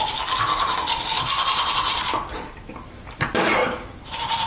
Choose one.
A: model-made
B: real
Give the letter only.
A